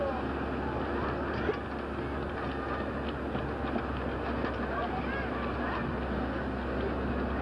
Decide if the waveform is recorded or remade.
recorded